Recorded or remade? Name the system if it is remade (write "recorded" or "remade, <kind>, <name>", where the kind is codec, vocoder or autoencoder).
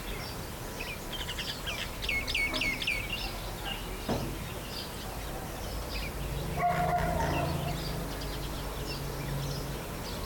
recorded